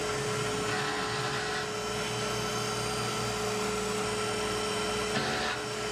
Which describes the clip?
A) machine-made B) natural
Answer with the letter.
B